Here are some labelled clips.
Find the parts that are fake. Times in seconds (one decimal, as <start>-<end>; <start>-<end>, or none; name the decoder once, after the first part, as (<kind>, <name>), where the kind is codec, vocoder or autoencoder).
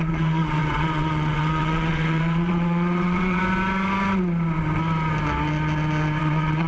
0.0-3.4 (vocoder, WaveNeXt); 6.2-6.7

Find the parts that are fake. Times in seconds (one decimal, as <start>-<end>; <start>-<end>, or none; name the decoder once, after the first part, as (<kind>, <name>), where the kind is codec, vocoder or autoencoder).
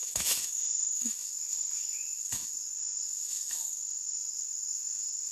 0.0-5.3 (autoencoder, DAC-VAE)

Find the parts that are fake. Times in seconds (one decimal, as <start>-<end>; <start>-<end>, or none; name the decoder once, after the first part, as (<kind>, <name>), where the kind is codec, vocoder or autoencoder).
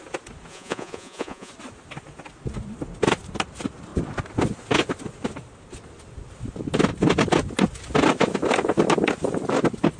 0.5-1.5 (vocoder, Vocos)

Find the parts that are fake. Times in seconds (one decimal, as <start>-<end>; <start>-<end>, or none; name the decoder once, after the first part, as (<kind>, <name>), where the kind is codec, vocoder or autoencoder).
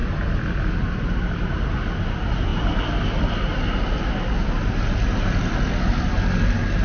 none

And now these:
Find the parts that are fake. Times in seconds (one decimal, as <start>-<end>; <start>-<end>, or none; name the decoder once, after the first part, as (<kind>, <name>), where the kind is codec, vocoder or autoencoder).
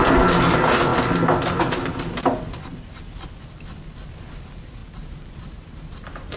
4.8-6.4 (vocoder, BigVGAN v2)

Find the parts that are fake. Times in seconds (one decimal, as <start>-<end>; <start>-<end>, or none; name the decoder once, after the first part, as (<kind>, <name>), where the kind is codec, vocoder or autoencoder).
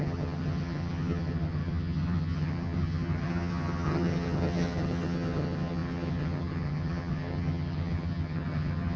0.0-9.0 (vocoder, HiFi-GAN)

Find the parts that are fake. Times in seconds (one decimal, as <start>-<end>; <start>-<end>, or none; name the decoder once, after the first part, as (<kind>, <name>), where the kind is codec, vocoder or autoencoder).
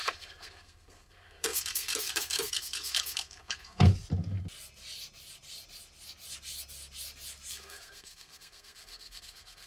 0.0-3.9 (codec, SNAC); 7.5-9.7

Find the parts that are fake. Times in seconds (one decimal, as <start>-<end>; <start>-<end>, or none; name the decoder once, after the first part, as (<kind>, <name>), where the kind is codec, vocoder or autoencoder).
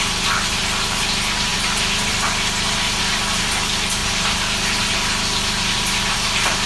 none